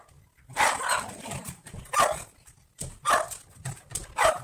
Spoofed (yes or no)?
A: no